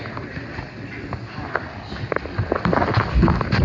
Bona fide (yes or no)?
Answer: yes